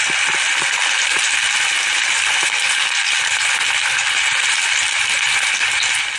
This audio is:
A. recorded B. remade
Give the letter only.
A